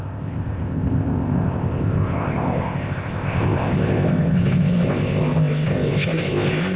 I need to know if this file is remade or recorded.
remade